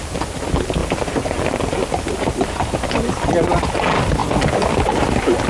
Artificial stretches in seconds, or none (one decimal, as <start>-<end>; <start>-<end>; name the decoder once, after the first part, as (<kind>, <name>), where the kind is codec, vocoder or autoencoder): none

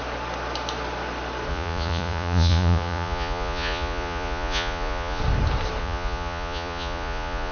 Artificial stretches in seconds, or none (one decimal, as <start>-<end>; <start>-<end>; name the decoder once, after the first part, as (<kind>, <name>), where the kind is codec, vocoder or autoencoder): 1.5-5.2 (vocoder, Vocos); 5.8-7.5

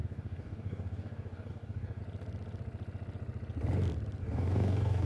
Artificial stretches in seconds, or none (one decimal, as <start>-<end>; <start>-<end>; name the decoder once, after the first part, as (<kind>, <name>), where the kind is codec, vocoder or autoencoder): 0.0-2.0 (codec, DAC); 4.2-5.1

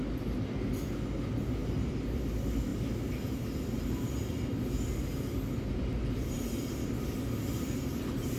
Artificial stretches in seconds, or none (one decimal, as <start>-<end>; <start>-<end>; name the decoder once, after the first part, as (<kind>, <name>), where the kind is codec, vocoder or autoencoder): none

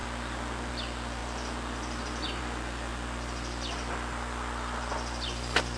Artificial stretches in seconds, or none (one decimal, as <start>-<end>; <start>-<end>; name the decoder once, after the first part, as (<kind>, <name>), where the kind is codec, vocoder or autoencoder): none